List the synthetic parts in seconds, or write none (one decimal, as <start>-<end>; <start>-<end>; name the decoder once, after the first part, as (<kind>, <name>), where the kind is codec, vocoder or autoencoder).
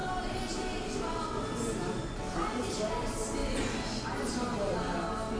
none